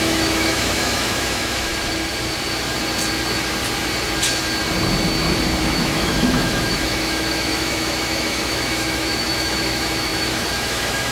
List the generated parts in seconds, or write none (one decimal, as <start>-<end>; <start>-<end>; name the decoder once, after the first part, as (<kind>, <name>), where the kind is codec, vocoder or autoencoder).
0.0-1.7 (autoencoder, DAC-VAE); 5.6-11.1